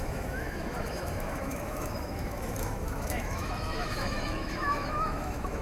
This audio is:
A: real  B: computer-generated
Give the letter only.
B